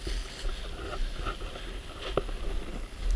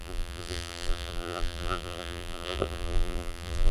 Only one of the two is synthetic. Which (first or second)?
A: second